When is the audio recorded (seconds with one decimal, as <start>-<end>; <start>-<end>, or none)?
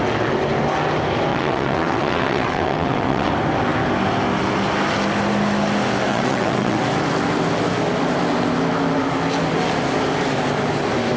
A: 0.0-1.3; 3.3-6.1; 6.8-11.2